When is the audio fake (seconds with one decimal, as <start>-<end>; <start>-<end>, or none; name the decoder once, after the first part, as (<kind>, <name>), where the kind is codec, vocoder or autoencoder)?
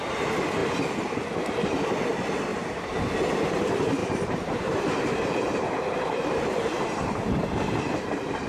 2.5-3.0 (vocoder, BigVGAN v2); 4.0-8.5